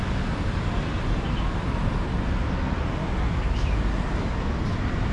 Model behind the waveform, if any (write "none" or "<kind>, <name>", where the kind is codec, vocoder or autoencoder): none